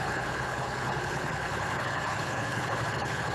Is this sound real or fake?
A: fake